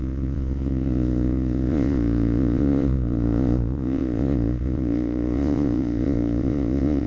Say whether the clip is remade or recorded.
remade